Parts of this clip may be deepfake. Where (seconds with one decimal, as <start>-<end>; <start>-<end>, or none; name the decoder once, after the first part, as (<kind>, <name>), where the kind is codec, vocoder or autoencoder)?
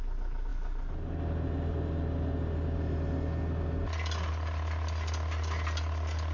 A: none